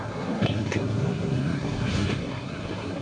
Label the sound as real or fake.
fake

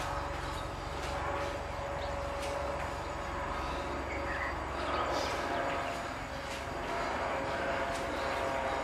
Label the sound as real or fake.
real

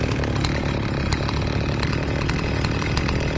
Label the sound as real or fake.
real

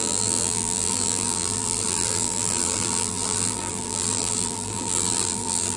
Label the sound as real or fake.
fake